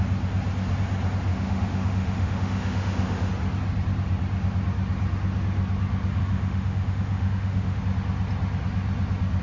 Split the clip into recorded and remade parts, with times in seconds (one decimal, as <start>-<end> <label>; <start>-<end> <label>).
0.0-1.3 recorded; 1.3-3.3 remade; 3.3-6.2 recorded; 6.2-7.8 remade; 7.8-9.4 recorded